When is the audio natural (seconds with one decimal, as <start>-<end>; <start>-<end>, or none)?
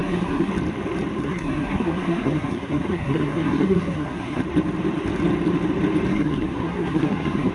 0.5-1.2; 4.4-6.1